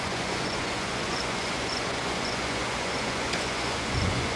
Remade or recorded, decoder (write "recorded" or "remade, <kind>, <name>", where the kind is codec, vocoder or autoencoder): remade, vocoder, Vocos